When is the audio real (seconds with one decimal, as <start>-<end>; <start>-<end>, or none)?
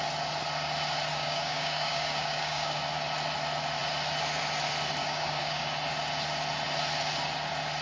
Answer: 0.0-1.1; 2.8-5.0; 5.6-7.8